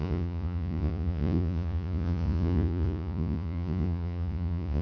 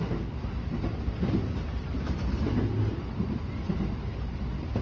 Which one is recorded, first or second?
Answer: second